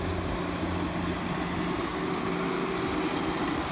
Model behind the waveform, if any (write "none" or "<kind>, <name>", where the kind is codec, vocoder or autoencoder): none